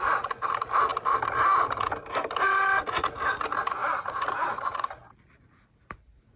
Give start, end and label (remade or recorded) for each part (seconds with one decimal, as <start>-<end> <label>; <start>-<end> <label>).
0.0-3.8 recorded; 3.8-4.8 remade; 4.8-6.4 recorded